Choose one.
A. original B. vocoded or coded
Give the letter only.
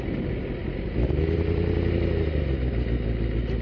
A